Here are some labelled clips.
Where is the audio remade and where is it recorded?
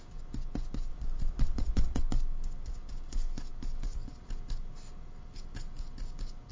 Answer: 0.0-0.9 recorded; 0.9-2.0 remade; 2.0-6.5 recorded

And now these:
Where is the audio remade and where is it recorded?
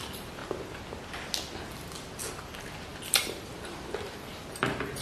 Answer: 0.0-0.4 remade; 0.4-2.9 recorded; 2.9-5.0 remade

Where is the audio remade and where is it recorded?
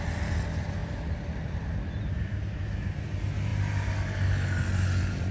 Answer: 0.0-5.3 recorded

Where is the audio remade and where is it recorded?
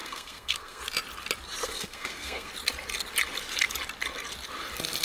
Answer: 0.0-0.8 remade; 0.8-1.6 recorded; 1.6-2.5 remade; 2.5-5.0 recorded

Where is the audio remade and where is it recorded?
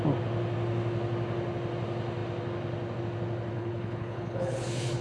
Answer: 0.0-3.5 recorded; 3.5-5.0 remade